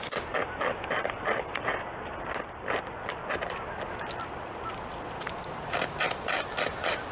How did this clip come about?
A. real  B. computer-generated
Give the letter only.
A